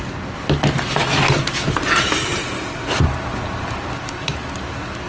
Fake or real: real